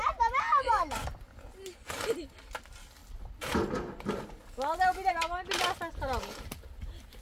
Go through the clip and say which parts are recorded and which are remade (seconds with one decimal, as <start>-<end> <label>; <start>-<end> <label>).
0.0-7.2 recorded